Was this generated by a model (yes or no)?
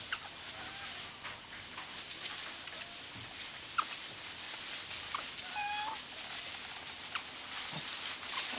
no